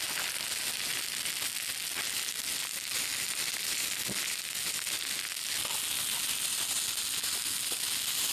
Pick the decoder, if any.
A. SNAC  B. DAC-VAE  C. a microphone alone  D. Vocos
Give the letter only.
C